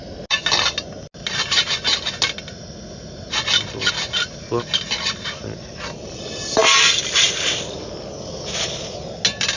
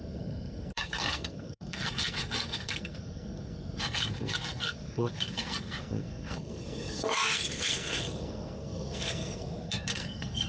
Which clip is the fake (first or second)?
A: second